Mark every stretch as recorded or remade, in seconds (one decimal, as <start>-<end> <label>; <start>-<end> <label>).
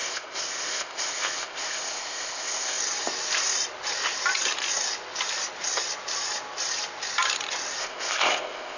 0.0-2.8 remade; 2.8-7.8 recorded; 7.8-8.8 remade